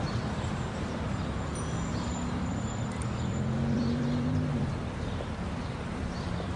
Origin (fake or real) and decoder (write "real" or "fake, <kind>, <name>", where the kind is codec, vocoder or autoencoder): fake, vocoder, BigVGAN v2